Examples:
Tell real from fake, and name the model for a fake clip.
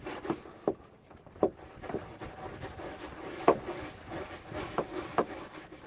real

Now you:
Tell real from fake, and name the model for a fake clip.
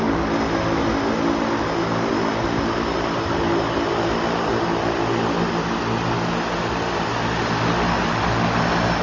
real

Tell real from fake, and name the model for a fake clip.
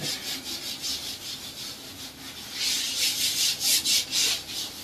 real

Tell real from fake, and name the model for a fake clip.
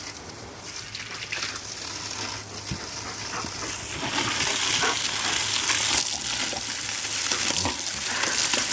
real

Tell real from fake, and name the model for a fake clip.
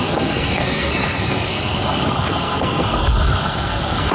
fake, codec, SNAC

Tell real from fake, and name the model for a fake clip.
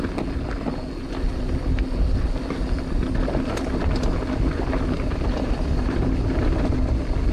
real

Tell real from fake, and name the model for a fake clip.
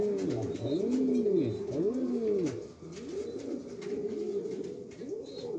real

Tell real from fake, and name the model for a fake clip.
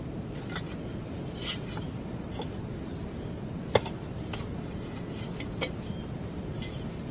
real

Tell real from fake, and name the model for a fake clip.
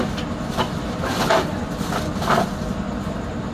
real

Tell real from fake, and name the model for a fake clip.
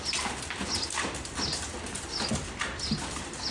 real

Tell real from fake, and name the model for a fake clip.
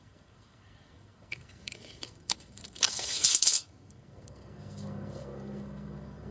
fake, codec, SNAC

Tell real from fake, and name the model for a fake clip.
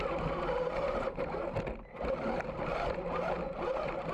real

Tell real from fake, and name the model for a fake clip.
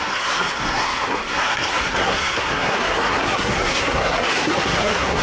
fake, codec, SNAC